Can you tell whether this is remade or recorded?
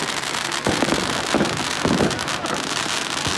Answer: recorded